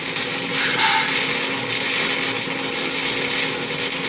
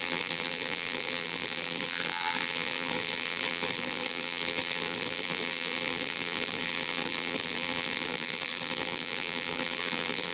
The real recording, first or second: first